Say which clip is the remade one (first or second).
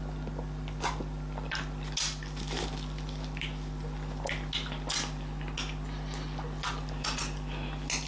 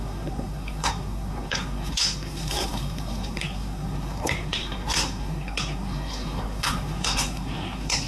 second